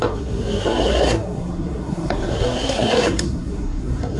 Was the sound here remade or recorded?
remade